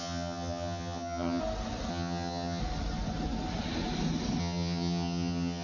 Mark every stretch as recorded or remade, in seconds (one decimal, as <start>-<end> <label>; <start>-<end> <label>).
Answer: 0.0-1.4 remade; 1.4-1.9 recorded; 1.9-2.6 remade; 2.6-4.4 recorded; 4.4-5.6 remade